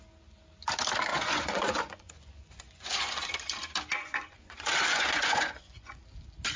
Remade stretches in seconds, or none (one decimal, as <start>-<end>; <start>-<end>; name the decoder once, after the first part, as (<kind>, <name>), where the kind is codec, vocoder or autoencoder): 1.1-3.3 (vocoder, Vocos); 4.0-6.0